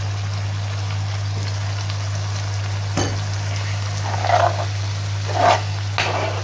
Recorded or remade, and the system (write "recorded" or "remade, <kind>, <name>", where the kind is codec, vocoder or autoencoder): recorded